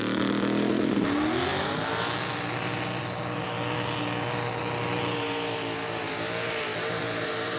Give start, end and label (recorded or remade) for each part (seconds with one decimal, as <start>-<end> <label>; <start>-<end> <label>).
0.0-6.7 recorded; 6.7-7.6 remade